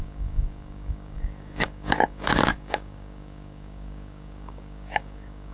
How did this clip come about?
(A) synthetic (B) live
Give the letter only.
A